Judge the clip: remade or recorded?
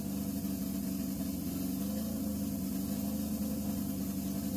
recorded